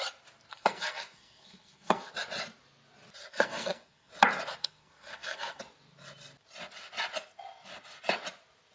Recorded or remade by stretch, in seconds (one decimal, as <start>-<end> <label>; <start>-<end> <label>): 0.0-0.5 recorded; 0.5-2.1 remade; 2.1-3.3 recorded; 3.3-4.1 remade; 4.1-4.6 recorded; 4.6-5.6 remade; 5.6-8.7 recorded